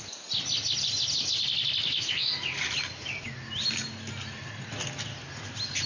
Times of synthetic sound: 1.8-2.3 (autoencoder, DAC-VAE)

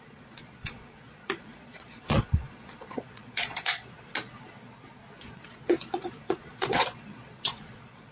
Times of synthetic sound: 0.0-4.1 (vocoder, Vocos); 5.2-8.1